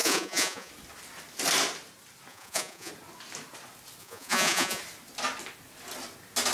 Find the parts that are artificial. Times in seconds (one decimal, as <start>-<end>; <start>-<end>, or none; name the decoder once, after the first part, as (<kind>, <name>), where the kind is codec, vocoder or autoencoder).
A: 0.0-0.7 (vocoder, Vocos); 2.3-2.9; 4.0-4.8